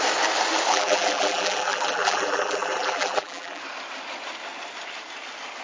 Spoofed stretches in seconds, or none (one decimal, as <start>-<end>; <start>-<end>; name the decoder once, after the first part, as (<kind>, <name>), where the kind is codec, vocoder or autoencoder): 0.7-3.6 (vocoder, BigVGAN v2)